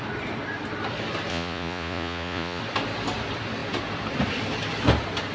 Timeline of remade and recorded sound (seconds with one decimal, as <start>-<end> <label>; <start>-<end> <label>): 0.0-1.3 recorded; 1.3-2.6 remade; 2.6-5.3 recorded

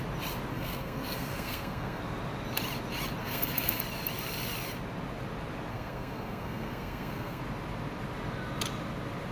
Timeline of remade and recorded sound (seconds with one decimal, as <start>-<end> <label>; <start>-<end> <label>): 0.0-0.5 recorded; 0.5-2.0 remade; 2.0-3.2 recorded; 3.2-3.8 remade; 3.8-5.7 recorded; 5.7-7.4 remade; 7.4-9.3 recorded

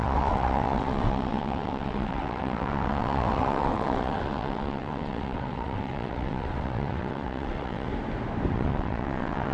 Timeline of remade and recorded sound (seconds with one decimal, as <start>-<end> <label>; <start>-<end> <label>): 0.0-7.9 remade; 7.9-8.5 recorded; 8.5-9.5 remade

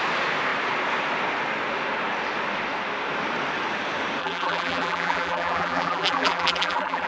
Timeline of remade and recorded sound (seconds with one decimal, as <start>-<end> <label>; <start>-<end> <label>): 0.0-4.2 recorded; 4.2-7.1 remade